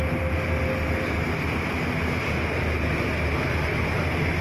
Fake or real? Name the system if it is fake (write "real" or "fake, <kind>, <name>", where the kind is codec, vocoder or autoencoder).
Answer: real